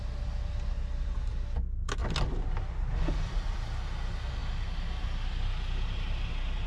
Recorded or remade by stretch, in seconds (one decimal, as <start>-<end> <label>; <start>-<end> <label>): 0.0-6.7 recorded